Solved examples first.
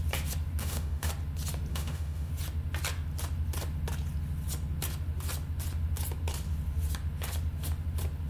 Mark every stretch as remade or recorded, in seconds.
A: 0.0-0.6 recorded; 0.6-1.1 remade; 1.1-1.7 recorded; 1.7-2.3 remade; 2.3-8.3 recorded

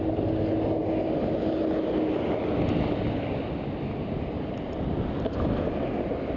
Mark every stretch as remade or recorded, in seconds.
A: 0.0-6.4 recorded

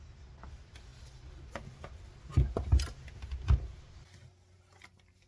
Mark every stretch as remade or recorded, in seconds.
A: 0.0-5.3 recorded

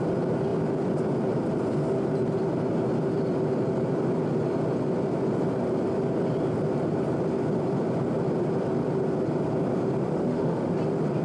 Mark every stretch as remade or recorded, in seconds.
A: 0.0-10.1 recorded; 10.1-10.7 remade; 10.7-11.2 recorded

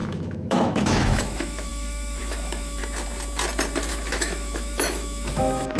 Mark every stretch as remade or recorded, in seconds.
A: 0.0-2.8 remade; 2.8-3.9 recorded; 3.9-5.8 remade

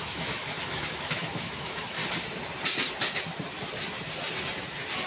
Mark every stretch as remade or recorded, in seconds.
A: 0.0-2.0 remade; 2.0-5.1 recorded